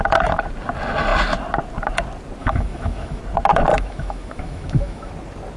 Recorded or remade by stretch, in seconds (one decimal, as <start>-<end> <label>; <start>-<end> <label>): 0.0-2.4 recorded; 2.4-3.2 remade; 3.2-3.7 recorded; 3.7-5.1 remade; 5.1-5.6 recorded